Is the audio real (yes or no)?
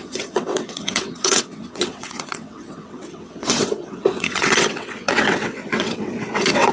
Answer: no